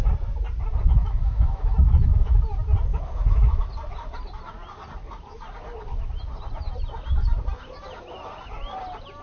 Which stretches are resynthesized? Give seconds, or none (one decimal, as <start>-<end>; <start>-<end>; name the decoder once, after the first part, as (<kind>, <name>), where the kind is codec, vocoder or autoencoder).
1.0-2.0 (autoencoder, DAC-VAE); 2.9-3.6